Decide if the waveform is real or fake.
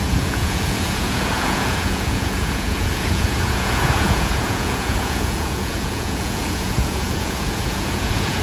fake